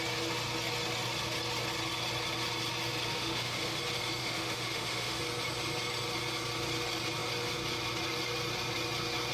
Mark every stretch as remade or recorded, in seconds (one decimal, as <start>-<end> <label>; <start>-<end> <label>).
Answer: 0.0-3.1 recorded; 3.1-3.8 remade; 3.8-4.2 recorded; 4.2-5.2 remade; 5.2-9.3 recorded